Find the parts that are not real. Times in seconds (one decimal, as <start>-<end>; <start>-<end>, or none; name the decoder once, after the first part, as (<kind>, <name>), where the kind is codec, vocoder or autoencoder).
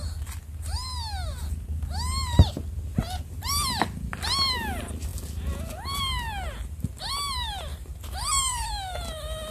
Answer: 7.7-8.7 (vocoder, BigVGAN v2)